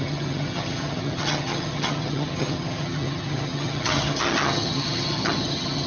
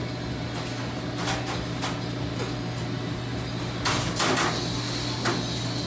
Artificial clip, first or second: first